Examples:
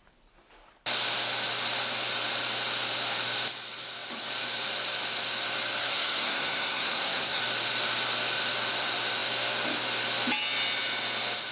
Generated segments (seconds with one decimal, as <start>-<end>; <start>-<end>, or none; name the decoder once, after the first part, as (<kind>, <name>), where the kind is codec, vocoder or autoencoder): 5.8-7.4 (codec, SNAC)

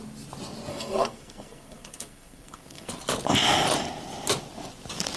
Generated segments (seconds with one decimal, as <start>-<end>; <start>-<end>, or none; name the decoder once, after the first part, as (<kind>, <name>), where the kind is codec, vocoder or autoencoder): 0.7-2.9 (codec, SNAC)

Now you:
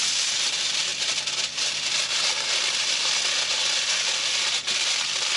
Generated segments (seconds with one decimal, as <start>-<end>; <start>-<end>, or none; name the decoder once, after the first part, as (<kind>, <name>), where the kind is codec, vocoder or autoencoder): none

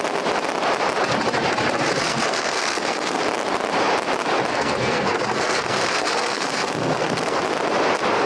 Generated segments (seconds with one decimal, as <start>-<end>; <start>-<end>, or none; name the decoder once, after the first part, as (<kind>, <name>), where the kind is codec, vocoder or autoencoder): 2.0-3.2 (codec, SNAC); 4.5-7.4

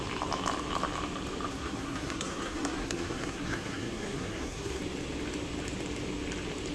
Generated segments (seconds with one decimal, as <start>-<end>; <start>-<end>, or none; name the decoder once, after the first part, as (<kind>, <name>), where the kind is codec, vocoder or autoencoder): 1.5-4.8 (codec, SNAC)

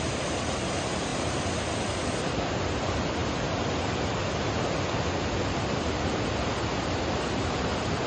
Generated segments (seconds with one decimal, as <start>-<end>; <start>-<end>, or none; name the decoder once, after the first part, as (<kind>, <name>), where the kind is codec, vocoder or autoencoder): none

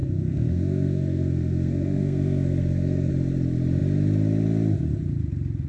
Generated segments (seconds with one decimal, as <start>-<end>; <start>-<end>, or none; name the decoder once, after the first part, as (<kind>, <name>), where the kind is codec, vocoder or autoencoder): 0.0-3.1 (codec, SNAC)

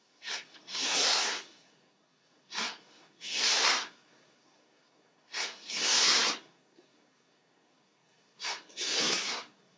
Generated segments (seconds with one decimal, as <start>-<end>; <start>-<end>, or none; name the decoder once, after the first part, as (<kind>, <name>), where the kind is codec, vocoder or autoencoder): 0.0-9.8 (codec, SNAC)